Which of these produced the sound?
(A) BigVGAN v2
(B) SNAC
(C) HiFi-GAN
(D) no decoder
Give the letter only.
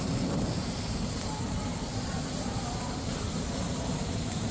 A